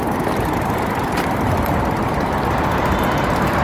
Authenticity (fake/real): real